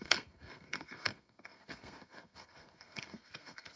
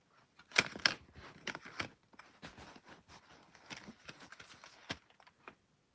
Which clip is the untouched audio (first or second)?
second